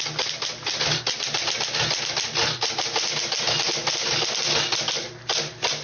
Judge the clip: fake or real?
real